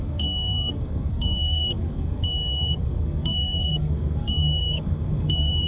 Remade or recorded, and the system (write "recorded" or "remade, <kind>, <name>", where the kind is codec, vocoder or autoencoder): remade, codec, SNAC